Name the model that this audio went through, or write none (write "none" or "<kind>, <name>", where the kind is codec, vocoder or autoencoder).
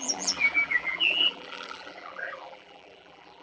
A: vocoder, BigVGAN v2